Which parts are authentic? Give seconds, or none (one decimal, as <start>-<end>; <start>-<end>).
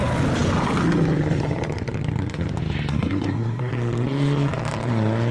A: 0.0-2.9; 3.7-5.3